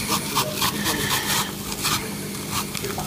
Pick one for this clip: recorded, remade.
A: recorded